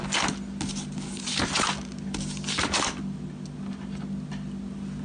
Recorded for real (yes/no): yes